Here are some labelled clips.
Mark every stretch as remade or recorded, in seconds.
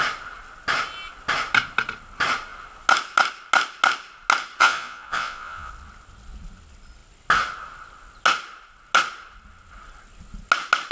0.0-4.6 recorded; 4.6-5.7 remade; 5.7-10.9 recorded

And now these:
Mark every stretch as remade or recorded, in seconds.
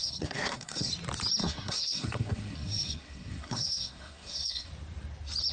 0.0-0.9 remade; 0.9-1.4 recorded; 1.4-4.7 remade; 4.7-5.5 recorded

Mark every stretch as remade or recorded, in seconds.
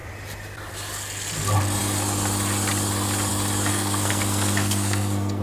0.0-3.7 recorded; 3.7-5.4 remade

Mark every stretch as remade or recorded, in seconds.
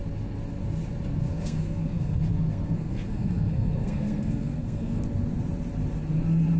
0.0-1.3 recorded; 1.3-5.0 remade; 5.0-6.6 recorded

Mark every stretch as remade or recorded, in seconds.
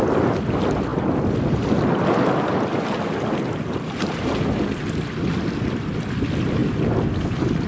0.0-7.7 recorded